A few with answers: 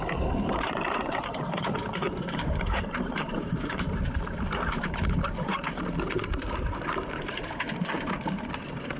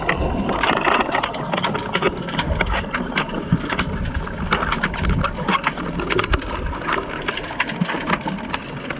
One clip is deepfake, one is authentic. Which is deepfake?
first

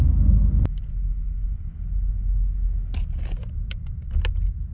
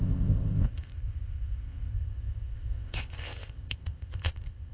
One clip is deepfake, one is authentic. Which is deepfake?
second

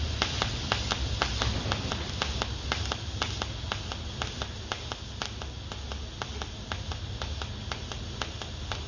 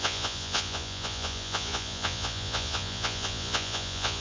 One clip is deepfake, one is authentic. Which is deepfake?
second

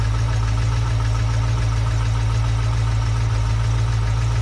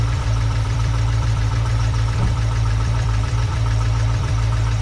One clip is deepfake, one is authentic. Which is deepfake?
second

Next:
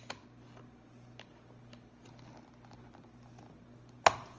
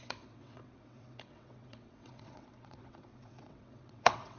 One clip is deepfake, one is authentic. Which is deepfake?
second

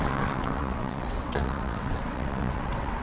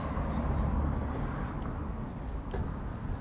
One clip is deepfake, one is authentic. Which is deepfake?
first